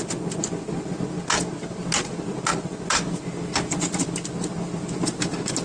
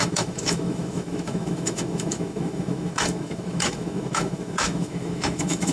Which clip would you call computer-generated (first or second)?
second